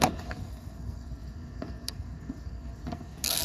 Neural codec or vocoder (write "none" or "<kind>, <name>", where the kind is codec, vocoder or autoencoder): codec, SNAC